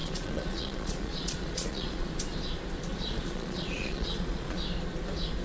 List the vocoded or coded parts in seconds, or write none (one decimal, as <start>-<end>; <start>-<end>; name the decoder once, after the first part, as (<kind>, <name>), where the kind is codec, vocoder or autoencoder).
0.0-2.1 (vocoder, Vocos); 2.9-4.6